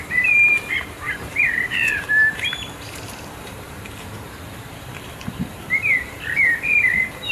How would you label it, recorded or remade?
remade